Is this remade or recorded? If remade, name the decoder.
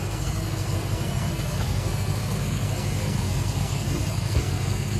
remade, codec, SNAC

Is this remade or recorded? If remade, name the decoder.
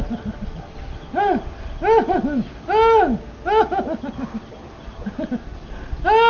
recorded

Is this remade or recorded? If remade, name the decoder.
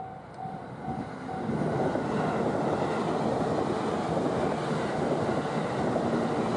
recorded